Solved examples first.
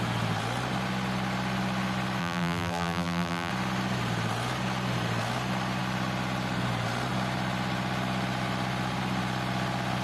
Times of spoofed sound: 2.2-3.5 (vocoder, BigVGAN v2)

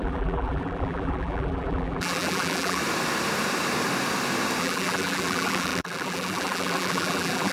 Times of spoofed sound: 0.0-2.8 (vocoder, BigVGAN v2); 4.6-7.5